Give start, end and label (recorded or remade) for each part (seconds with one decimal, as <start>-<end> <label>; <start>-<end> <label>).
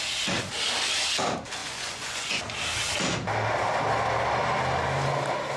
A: 0.0-1.6 recorded; 1.6-2.4 remade; 2.4-5.6 recorded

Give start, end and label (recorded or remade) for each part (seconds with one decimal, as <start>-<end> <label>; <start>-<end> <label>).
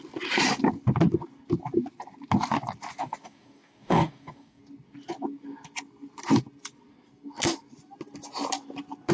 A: 0.0-3.0 recorded; 3.0-4.6 remade; 4.6-9.1 recorded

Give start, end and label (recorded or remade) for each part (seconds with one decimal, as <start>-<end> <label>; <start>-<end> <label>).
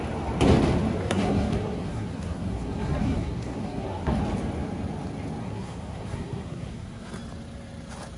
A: 0.0-1.0 recorded; 1.0-4.2 remade; 4.2-5.4 recorded; 5.4-7.1 remade; 7.1-8.2 recorded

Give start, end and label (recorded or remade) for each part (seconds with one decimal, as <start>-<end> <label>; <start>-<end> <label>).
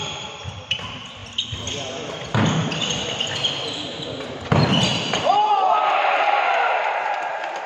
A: 0.0-4.9 recorded; 4.9-5.5 remade; 5.5-7.7 recorded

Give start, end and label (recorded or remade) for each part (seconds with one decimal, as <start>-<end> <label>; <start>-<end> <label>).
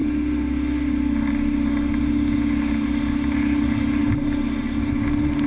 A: 0.0-5.5 recorded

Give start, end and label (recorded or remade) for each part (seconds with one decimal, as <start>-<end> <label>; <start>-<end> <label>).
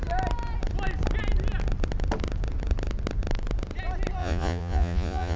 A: 0.0-4.2 recorded; 4.2-5.4 remade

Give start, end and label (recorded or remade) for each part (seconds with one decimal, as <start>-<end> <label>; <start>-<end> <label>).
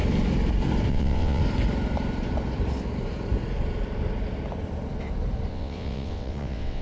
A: 0.0-0.9 recorded; 0.9-1.4 remade; 1.4-5.5 recorded; 5.5-6.8 remade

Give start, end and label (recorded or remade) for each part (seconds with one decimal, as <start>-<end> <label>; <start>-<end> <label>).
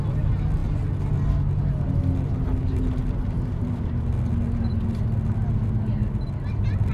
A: 0.0-6.9 recorded